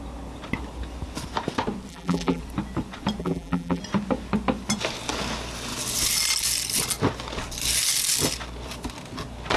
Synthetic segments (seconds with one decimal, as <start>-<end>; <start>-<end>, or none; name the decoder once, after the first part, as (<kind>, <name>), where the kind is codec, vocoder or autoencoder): 1.9-2.4 (vocoder, BigVGAN v2); 3.2-3.8